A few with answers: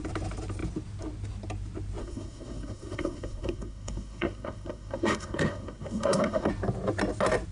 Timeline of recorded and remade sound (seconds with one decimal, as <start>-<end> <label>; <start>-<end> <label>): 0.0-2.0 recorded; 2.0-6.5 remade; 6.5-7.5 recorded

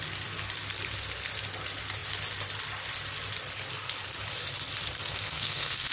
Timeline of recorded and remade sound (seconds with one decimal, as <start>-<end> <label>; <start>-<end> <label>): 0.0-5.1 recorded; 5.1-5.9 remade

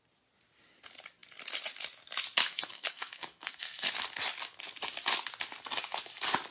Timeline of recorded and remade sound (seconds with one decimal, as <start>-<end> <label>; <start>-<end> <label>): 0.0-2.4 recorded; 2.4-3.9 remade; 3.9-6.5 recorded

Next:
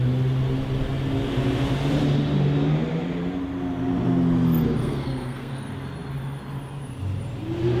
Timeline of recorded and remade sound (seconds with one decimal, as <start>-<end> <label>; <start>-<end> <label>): 0.0-4.8 recorded; 4.8-5.5 remade; 5.5-7.8 recorded